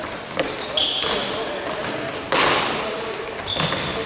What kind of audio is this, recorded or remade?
recorded